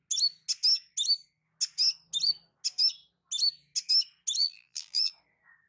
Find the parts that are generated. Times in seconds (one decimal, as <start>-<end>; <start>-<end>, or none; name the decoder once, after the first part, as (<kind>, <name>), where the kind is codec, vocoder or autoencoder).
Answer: 4.4-5.1 (vocoder, BigVGAN v2)

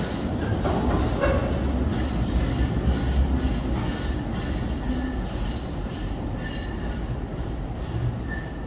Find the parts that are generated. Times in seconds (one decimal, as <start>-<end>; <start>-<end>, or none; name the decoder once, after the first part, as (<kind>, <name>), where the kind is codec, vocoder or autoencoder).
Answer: 7.3-8.0 (vocoder, BigVGAN v2)

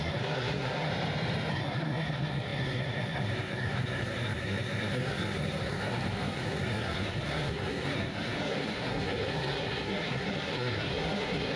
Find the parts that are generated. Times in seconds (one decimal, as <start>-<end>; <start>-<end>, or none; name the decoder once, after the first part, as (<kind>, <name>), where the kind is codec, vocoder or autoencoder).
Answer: 0.0-0.9 (codec, SNAC); 1.5-11.6

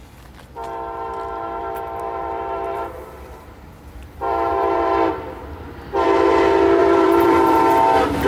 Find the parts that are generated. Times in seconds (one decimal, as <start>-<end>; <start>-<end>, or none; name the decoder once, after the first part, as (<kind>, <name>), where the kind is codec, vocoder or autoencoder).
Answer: 1.6-5.1 (vocoder, BigVGAN v2); 6.8-7.6

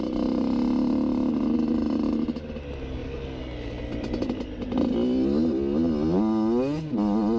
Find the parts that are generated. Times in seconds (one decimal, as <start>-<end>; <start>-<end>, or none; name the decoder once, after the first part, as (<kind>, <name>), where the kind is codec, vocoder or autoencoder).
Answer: none

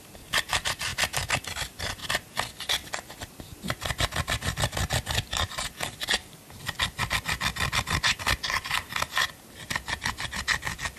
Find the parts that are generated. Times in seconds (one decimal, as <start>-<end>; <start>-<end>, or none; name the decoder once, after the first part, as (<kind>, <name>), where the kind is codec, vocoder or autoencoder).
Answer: none

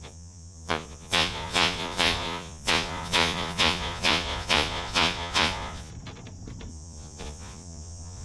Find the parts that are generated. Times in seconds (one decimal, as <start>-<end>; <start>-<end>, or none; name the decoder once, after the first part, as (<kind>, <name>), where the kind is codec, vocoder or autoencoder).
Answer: 0.0-5.9 (vocoder, Vocos); 6.7-8.2

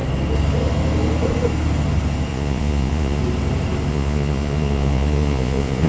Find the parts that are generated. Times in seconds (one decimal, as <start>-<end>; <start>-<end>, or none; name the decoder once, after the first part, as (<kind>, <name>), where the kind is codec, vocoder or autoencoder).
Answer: 2.3-3.2 (vocoder, Vocos); 3.9-5.9